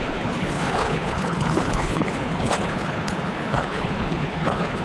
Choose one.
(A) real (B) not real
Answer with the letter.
B